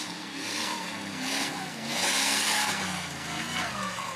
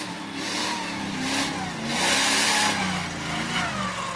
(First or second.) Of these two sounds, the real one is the second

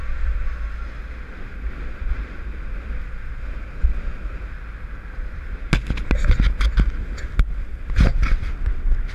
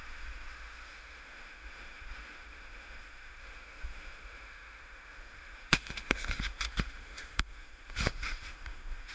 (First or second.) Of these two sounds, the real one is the first